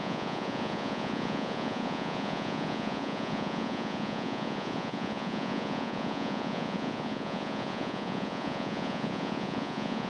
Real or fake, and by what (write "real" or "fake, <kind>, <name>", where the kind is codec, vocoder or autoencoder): fake, vocoder, Vocos